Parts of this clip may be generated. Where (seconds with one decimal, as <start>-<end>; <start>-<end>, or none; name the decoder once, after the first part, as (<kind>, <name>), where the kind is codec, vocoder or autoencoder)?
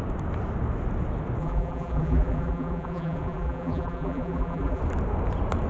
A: 1.4-4.8 (vocoder, BigVGAN v2)